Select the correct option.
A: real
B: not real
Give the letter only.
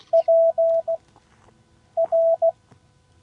A